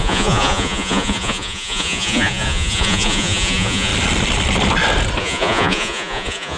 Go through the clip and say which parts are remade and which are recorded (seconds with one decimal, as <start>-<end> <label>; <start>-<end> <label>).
0.0-3.9 remade; 3.9-5.2 recorded; 5.2-6.6 remade